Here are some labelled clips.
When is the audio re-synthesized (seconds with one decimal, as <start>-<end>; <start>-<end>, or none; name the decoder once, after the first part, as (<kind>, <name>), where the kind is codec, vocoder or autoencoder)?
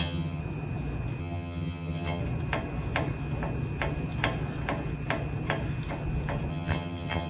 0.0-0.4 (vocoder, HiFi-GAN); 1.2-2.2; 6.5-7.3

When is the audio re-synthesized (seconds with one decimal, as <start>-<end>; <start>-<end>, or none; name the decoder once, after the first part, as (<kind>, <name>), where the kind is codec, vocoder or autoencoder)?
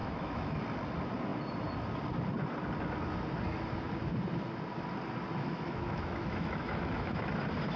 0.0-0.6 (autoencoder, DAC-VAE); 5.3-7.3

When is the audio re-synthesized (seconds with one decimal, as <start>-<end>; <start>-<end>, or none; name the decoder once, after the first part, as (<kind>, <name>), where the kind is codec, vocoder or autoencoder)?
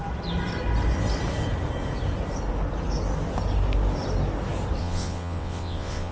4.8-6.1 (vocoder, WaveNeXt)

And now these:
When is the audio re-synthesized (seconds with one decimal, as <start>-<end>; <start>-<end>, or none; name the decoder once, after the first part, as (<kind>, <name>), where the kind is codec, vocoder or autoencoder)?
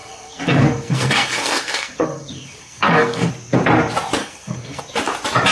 0.0-3.3 (codec, SNAC); 4.2-4.8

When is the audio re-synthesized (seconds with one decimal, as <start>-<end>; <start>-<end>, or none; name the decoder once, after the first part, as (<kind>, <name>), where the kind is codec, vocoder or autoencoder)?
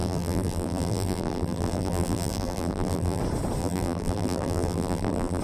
0.0-3.2 (vocoder, BigVGAN v2); 3.6-5.4